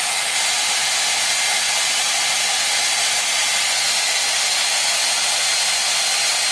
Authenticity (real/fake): real